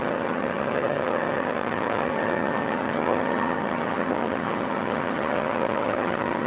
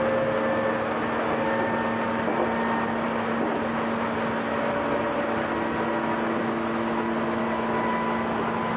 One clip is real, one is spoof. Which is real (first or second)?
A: second